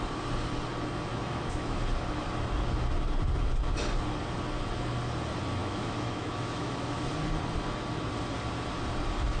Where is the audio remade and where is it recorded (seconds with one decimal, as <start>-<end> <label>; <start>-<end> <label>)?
0.0-1.1 recorded; 1.1-1.8 remade; 1.8-5.6 recorded; 5.6-7.1 remade; 7.1-9.4 recorded